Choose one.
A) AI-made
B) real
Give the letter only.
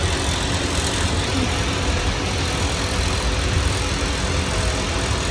B